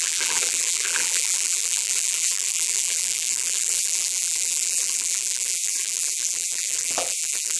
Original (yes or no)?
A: no